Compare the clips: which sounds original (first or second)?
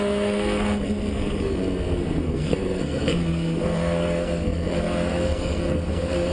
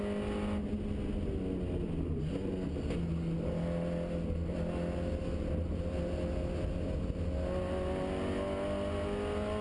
second